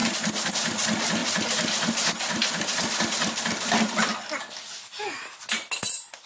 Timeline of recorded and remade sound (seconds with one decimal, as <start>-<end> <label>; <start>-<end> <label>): 0.0-6.3 recorded